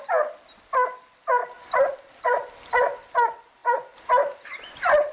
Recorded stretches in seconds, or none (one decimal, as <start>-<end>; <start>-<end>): 0.0-5.1